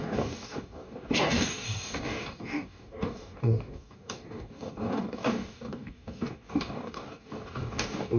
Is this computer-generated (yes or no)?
yes